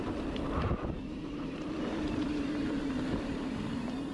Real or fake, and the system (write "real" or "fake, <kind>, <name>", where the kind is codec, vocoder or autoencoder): fake, vocoder, BigVGAN v2